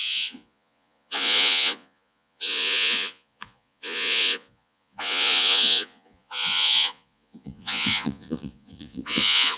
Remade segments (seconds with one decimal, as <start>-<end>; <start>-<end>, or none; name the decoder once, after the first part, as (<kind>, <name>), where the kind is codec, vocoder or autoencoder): 0.0-9.6 (vocoder, Vocos)